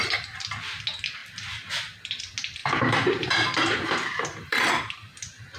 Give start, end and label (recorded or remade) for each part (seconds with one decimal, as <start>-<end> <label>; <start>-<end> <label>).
0.0-1.2 recorded; 1.2-2.2 remade; 2.2-2.6 recorded; 2.6-4.7 remade; 4.7-5.6 recorded